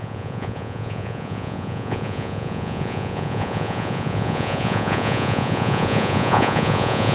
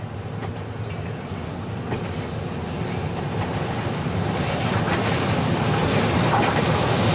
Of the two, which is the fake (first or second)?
first